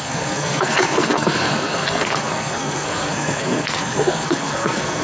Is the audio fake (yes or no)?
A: yes